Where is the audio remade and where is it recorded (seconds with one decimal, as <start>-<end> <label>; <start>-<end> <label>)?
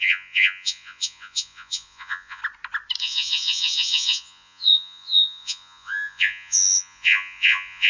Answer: 0.0-2.4 remade; 2.4-3.0 recorded; 3.0-7.9 remade